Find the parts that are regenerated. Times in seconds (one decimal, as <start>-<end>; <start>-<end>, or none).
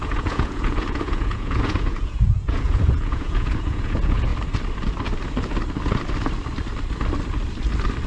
0.0-4.3